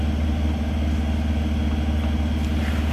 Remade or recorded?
recorded